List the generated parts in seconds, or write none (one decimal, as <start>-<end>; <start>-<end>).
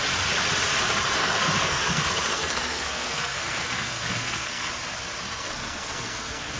1.2-4.7; 5.2-6.6